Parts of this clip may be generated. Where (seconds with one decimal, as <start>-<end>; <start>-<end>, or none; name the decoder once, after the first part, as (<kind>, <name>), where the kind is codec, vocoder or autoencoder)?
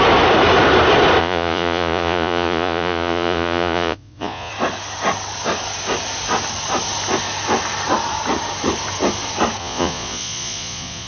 1.2-4.5 (vocoder, Vocos); 9.6-11.1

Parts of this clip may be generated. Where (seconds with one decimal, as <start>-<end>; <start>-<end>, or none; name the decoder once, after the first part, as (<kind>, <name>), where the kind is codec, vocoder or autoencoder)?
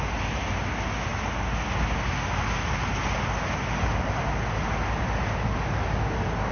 none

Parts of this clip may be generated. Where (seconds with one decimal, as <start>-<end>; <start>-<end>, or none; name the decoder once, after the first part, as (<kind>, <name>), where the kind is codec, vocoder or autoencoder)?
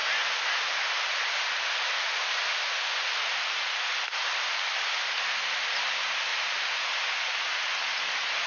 none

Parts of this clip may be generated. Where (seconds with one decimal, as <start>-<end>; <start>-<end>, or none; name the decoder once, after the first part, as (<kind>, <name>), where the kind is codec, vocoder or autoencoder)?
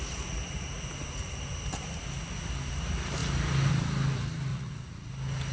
4.5-5.1 (vocoder, Vocos)